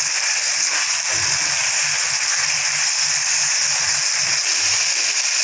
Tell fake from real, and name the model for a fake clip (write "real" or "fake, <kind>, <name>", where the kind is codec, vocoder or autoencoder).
real